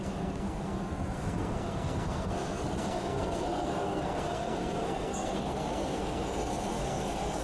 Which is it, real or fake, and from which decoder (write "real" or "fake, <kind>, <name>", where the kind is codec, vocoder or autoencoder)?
fake, codec, SNAC